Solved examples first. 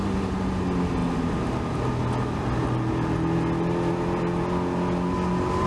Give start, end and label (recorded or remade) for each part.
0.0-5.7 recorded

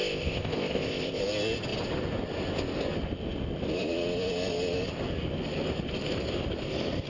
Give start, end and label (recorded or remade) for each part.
0.0-1.2 remade; 1.2-7.1 recorded

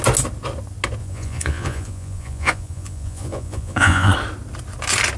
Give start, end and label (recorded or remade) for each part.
0.0-1.0 recorded; 1.0-4.1 remade; 4.1-5.2 recorded

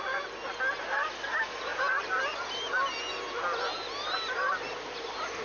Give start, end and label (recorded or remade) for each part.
0.0-5.4 recorded

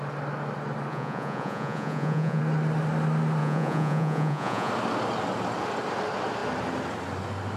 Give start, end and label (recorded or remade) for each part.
0.0-0.9 recorded; 0.9-2.4 remade; 2.4-3.4 recorded; 3.4-4.7 remade; 4.7-7.6 recorded

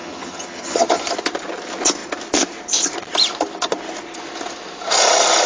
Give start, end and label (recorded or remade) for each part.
0.0-1.0 remade; 1.0-5.5 recorded

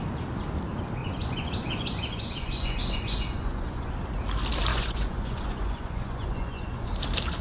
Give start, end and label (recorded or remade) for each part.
0.0-1.0 recorded; 1.0-3.9 remade; 3.9-4.7 recorded; 4.7-6.9 remade; 6.9-7.4 recorded

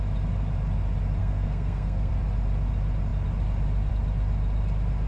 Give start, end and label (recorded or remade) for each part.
0.0-1.2 recorded; 1.2-2.1 remade; 2.1-5.1 recorded